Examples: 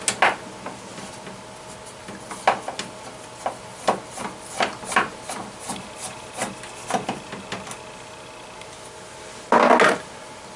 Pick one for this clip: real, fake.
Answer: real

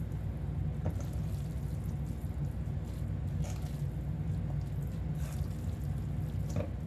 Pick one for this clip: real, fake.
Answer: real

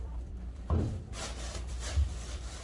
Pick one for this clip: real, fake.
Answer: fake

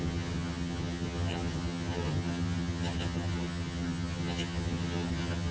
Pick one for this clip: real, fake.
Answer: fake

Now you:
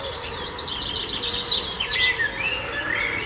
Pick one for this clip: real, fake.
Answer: real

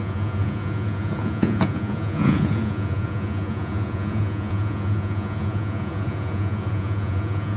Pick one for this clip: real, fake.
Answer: fake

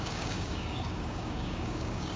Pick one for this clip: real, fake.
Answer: fake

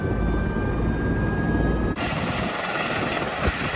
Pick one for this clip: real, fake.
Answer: real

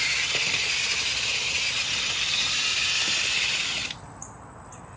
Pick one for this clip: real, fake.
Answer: real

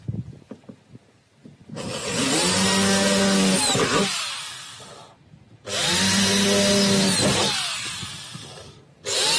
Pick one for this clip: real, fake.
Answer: real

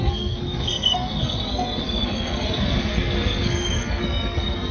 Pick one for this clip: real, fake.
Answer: fake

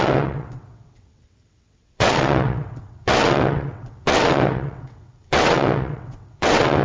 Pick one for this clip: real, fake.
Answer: fake